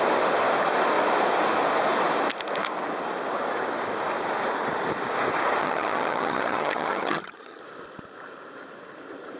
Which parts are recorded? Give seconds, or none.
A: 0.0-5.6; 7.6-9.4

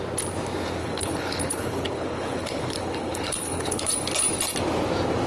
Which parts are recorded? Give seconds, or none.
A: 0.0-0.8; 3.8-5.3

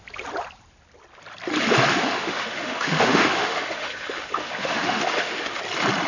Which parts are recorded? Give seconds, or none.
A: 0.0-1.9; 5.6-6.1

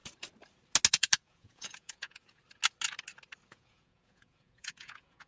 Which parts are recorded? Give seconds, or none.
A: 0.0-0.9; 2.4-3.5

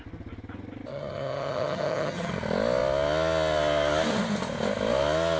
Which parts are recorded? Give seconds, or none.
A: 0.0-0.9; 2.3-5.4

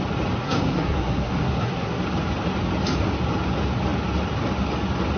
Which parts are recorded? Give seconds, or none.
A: 0.0-0.4; 2.0-5.2

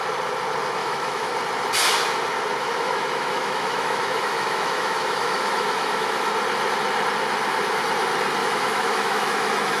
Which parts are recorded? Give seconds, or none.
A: 0.0-0.8; 1.3-2.6; 6.3-8.4